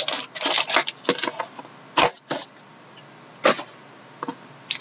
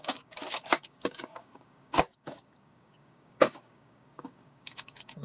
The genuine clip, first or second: first